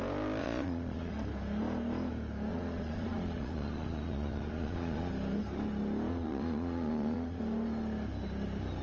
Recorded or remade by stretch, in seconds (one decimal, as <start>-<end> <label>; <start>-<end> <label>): 0.0-0.4 recorded; 0.4-1.1 remade; 1.1-2.5 recorded; 2.5-5.1 remade; 5.1-6.1 recorded; 6.1-7.4 remade; 7.4-8.8 recorded